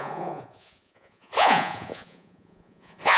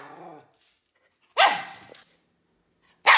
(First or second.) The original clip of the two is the second